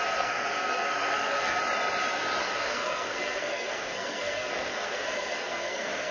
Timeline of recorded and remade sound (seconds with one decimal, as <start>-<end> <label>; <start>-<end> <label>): 0.0-1.6 remade; 1.6-2.4 recorded; 2.4-6.1 remade